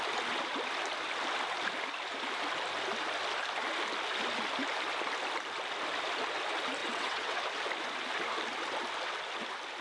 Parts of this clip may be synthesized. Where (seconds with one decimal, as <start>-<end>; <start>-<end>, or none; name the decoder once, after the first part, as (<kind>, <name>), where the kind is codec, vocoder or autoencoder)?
6.8-7.4 (vocoder, WaveNeXt)